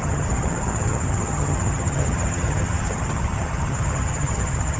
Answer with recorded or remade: remade